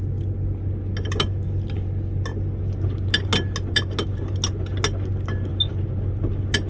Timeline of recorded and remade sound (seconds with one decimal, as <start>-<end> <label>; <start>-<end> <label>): 0.0-6.7 recorded